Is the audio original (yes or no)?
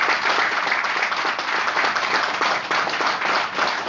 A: yes